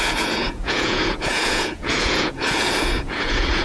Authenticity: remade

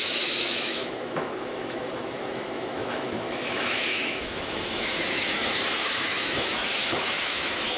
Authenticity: remade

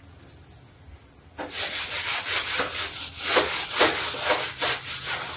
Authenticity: recorded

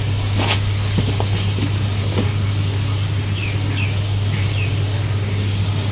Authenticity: recorded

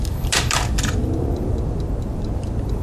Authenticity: remade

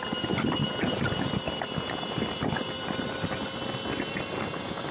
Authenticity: recorded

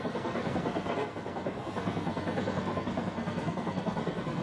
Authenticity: remade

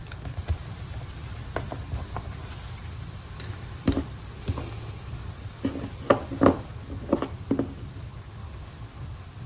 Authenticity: recorded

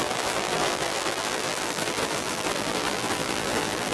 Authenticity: remade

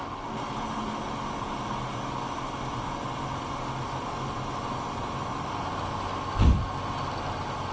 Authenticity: recorded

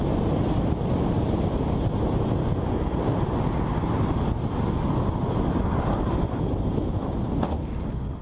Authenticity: recorded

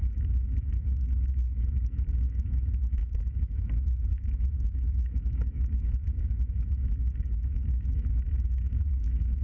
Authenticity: remade